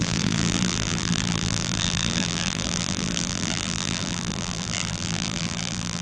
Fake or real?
fake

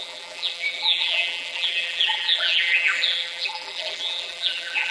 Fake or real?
fake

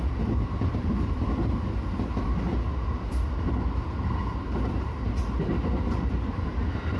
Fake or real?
real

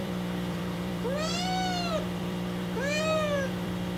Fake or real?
fake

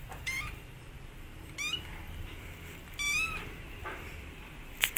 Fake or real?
fake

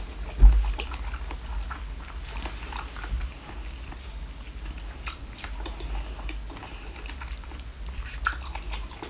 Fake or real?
real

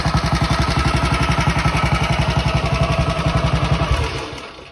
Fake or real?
real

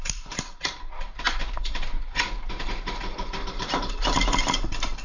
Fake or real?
real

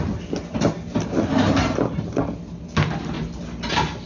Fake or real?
real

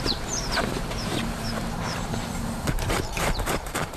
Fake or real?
fake